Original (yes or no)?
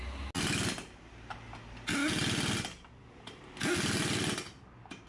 yes